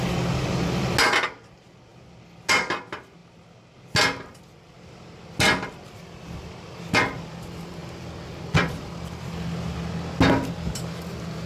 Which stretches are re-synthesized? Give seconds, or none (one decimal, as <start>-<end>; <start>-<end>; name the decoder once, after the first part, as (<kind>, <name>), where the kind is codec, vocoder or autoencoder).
none

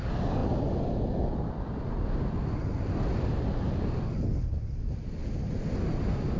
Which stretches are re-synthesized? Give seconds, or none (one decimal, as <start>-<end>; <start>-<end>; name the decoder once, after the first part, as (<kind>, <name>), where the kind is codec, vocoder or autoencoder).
none

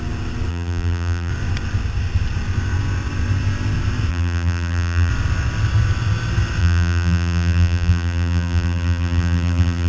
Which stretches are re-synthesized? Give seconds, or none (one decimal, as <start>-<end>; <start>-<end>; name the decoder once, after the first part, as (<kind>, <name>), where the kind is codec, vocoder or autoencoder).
0.5-1.3 (vocoder, BigVGAN v2); 4.1-5.1; 6.6-9.9

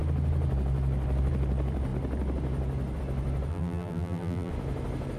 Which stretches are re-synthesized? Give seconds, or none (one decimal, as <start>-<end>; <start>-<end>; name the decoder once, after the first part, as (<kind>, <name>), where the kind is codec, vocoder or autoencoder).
3.5-4.5 (vocoder, BigVGAN v2)